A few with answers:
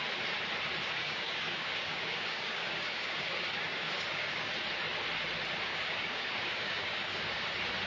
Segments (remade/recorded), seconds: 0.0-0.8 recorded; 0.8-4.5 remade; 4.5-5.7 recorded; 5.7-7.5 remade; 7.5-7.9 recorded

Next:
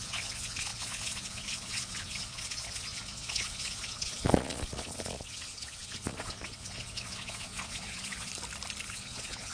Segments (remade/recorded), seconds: 0.0-8.3 remade; 8.3-8.9 recorded; 8.9-9.5 remade

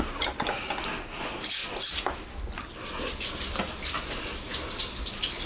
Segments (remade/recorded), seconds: 0.0-5.5 recorded

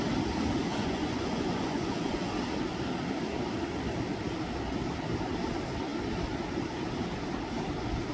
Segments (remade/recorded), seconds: 0.0-0.7 recorded; 0.7-2.3 remade; 2.3-8.1 recorded

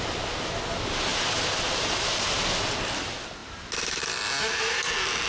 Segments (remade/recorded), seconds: 0.0-5.3 recorded

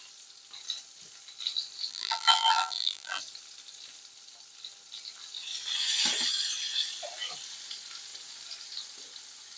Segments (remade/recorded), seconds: 0.0-1.9 recorded; 1.9-3.2 remade; 3.2-9.6 recorded

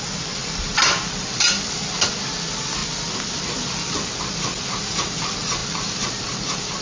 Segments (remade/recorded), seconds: 0.0-0.4 recorded; 0.4-1.8 remade; 1.8-2.8 recorded; 2.8-3.4 remade; 3.4-5.6 recorded; 5.6-6.8 remade

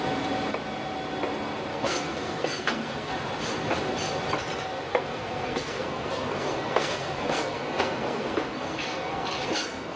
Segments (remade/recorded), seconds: 0.0-1.7 recorded; 1.7-3.1 remade; 3.1-4.9 recorded; 4.9-10.0 remade